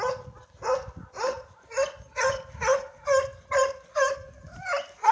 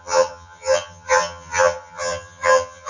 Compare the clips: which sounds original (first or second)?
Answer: first